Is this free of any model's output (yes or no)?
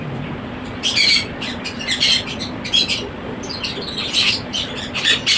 yes